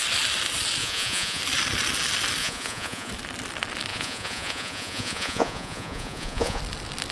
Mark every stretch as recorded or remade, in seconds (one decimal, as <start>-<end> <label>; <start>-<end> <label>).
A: 0.0-0.8 recorded; 0.8-1.4 remade; 1.4-2.4 recorded; 2.4-3.1 remade; 3.1-3.9 recorded; 3.9-6.6 remade; 6.6-7.1 recorded

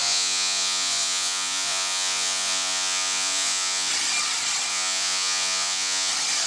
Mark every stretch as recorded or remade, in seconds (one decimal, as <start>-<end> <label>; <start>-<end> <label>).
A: 0.0-3.9 remade; 3.9-4.7 recorded; 4.7-6.1 remade; 6.1-6.5 recorded

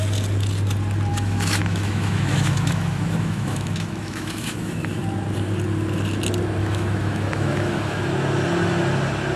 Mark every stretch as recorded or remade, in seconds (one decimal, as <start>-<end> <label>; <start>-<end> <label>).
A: 0.0-1.1 recorded; 1.1-5.0 remade; 5.0-6.6 recorded; 6.6-8.0 remade; 8.0-9.4 recorded

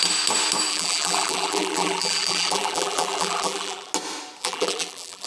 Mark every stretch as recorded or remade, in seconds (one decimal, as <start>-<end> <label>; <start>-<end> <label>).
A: 0.0-0.7 recorded; 0.7-3.9 remade; 3.9-4.4 recorded; 4.4-5.3 remade

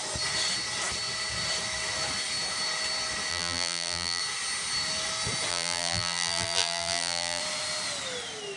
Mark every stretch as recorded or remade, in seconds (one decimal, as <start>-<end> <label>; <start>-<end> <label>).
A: 0.0-3.3 recorded; 3.3-4.2 remade; 4.2-5.5 recorded; 5.5-7.4 remade; 7.4-8.6 recorded